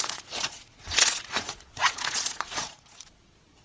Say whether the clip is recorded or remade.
remade